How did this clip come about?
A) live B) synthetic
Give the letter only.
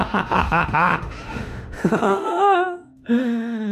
B